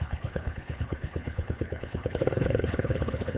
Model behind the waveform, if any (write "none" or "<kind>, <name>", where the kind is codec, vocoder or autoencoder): codec, HILCodec